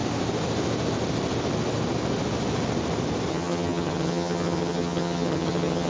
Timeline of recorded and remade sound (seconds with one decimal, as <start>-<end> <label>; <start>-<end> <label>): 0.0-3.3 recorded; 3.3-5.9 remade

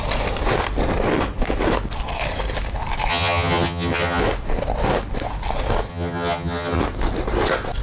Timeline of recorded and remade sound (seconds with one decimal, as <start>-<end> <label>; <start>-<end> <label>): 0.0-3.1 recorded; 3.1-4.2 remade; 4.2-5.9 recorded; 5.9-6.8 remade; 6.8-7.8 recorded

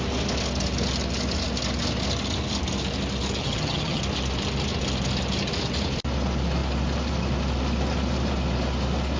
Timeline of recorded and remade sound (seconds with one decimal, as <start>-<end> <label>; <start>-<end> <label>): 0.0-3.4 recorded; 3.4-4.0 remade; 4.0-9.2 recorded

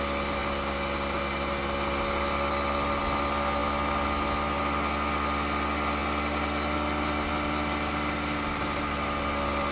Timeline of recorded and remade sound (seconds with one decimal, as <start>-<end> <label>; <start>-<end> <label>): 0.0-9.7 recorded

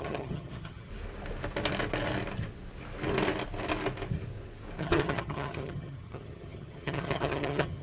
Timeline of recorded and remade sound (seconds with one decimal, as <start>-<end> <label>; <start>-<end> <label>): 0.0-0.9 remade; 0.9-4.8 recorded; 4.8-7.8 remade

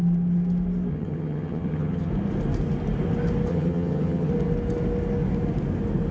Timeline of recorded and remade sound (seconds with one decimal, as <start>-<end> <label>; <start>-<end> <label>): 0.0-0.9 recorded; 0.9-2.1 remade; 2.1-3.5 recorded; 3.5-4.3 remade; 4.3-6.1 recorded